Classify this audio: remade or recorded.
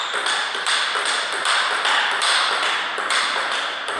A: recorded